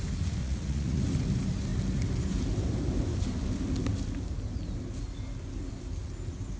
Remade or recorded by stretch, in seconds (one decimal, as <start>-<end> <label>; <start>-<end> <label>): 0.0-0.4 recorded; 0.4-1.0 remade; 1.0-6.6 recorded